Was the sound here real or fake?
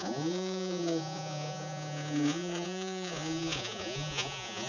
fake